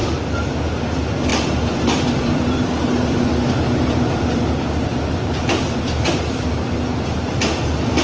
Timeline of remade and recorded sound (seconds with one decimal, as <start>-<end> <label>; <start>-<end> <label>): 0.0-0.5 remade; 0.5-1.3 recorded; 1.3-4.5 remade; 4.5-5.4 recorded; 5.4-6.7 remade; 6.7-8.0 recorded